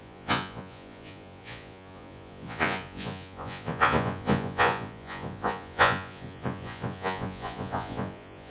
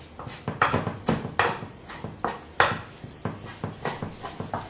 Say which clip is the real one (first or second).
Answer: second